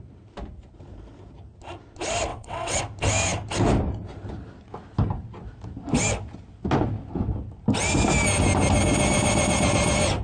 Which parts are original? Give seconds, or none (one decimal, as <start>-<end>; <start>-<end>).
0.0-2.3; 2.8-10.2